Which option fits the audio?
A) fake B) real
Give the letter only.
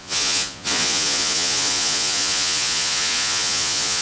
A